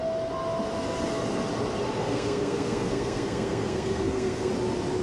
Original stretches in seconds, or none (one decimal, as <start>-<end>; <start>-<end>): 0.0-2.0; 4.5-5.0